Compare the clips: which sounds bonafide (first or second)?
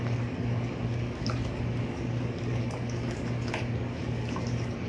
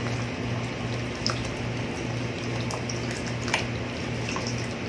second